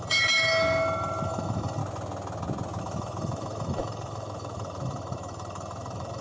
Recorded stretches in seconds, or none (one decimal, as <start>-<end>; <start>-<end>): 1.8-2.8

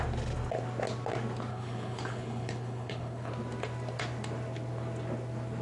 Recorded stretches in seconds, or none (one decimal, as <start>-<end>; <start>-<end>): 0.0-1.5; 3.3-5.6

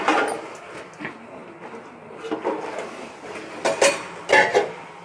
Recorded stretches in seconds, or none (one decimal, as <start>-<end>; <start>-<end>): 0.0-5.0

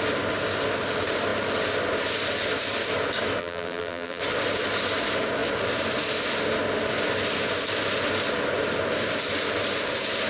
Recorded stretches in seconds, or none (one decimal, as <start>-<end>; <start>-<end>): 0.0-3.4; 4.2-10.3

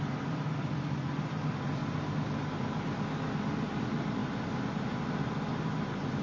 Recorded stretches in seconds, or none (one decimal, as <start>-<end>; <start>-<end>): 0.0-6.2

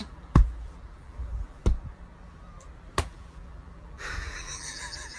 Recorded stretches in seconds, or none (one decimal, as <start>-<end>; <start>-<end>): 1.6-3.0